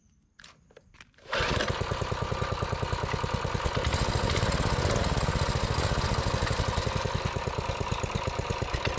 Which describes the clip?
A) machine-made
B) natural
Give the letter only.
B